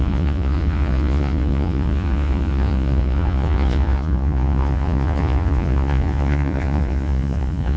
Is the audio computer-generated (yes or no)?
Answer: yes